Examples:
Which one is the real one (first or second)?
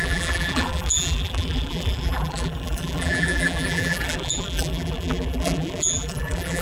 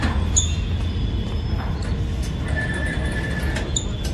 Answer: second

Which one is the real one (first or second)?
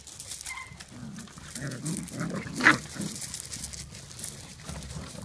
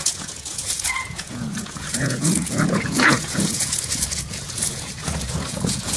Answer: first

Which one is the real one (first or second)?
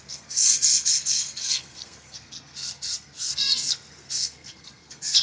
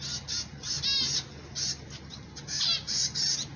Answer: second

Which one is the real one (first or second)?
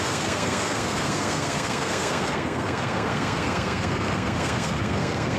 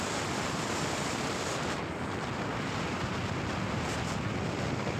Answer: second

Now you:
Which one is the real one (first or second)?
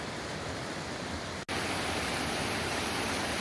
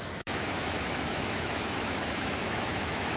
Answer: first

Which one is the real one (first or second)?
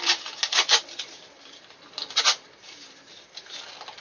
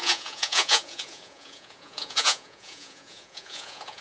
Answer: first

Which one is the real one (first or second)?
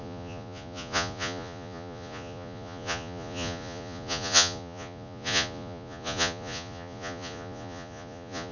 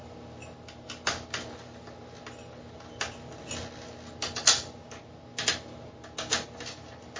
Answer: second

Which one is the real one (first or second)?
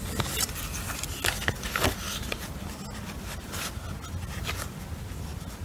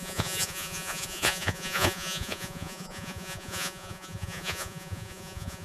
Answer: first